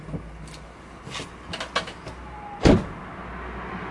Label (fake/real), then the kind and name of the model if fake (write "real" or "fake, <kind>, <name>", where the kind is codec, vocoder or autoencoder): real